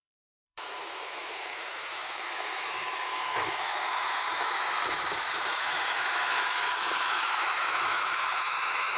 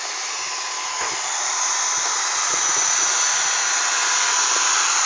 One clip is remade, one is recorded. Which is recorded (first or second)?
second